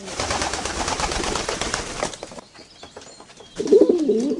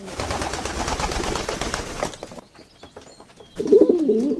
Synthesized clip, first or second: first